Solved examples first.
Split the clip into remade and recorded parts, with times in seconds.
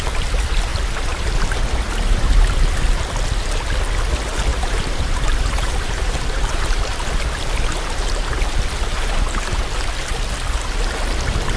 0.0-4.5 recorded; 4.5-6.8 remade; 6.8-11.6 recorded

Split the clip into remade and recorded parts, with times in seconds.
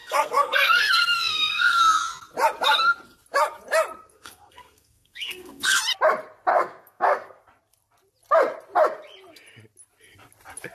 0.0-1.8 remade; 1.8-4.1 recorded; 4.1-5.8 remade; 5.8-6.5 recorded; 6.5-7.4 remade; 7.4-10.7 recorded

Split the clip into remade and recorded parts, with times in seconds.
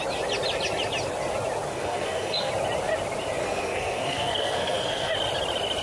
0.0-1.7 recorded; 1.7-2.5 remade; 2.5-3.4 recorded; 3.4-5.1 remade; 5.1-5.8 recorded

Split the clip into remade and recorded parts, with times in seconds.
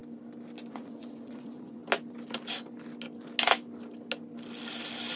0.0-0.7 recorded; 0.7-1.8 remade; 1.8-5.2 recorded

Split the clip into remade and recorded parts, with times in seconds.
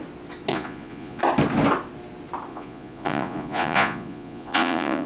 0.0-0.5 recorded; 0.5-1.2 remade; 1.2-2.5 recorded; 2.5-5.1 remade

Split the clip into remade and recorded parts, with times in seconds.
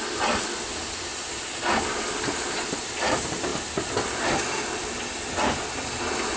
0.0-6.4 recorded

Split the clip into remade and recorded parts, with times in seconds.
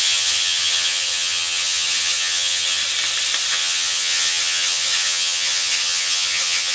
0.0-2.8 remade; 2.8-3.5 recorded; 3.5-6.7 remade